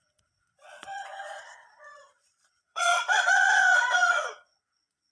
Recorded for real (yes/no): no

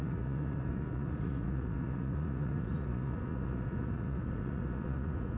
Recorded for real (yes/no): no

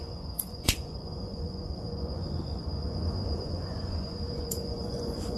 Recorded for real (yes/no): no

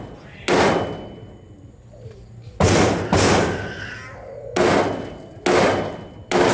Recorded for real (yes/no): yes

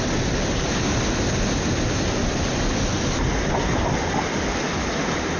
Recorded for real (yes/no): yes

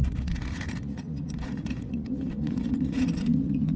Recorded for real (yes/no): no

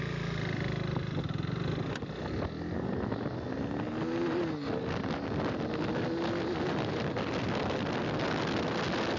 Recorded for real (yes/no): yes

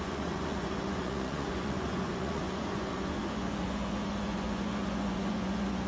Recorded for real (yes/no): no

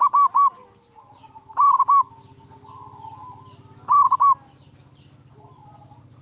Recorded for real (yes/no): yes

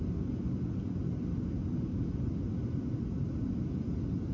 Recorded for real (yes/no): yes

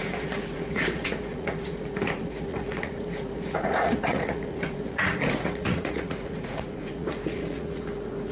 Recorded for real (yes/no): no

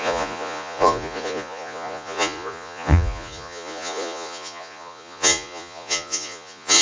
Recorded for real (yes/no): no